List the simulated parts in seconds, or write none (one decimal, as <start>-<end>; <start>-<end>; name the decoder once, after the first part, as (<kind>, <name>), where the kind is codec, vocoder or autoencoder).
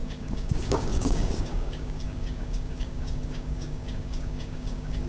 0.0-5.1 (codec, DAC)